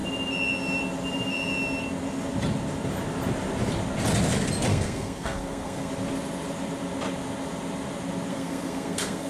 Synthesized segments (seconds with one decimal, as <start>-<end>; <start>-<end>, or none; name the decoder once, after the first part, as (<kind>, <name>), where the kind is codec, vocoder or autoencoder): 4.7-5.9 (codec, SNAC); 8.3-9.3